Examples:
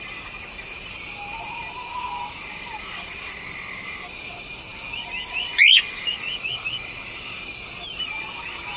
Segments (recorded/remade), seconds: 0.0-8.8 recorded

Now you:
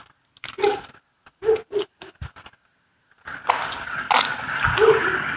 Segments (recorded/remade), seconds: 0.0-5.4 recorded

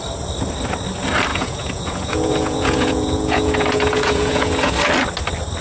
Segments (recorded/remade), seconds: 0.0-1.3 recorded; 1.3-4.7 remade; 4.7-5.6 recorded

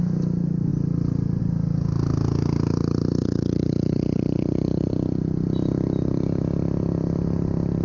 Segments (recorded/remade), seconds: 0.0-3.2 recorded; 3.2-4.9 remade; 4.9-7.8 recorded

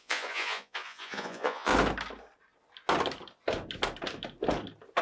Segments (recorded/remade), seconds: 0.0-1.7 remade; 1.7-5.0 recorded